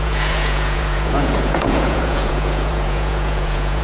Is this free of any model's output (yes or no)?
no